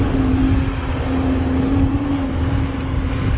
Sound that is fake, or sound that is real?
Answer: real